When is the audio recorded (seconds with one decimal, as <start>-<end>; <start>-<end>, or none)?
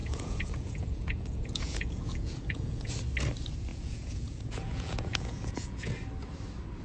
2.9-3.7; 5.9-6.8